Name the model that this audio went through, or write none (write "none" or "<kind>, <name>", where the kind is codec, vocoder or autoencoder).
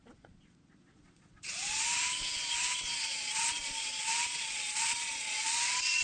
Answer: vocoder, Vocos